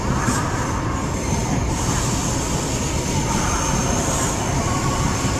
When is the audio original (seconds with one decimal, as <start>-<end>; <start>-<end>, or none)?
0.0-5.4